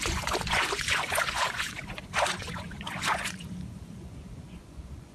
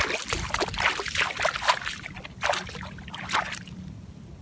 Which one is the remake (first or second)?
first